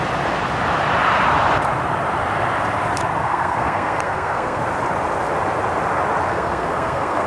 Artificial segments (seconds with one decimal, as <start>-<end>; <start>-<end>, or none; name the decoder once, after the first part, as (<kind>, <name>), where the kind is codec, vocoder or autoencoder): 3.2-4.6 (codec, SNAC); 6.3-7.3